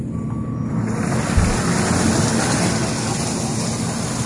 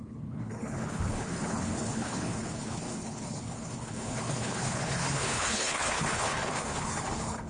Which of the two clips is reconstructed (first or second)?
second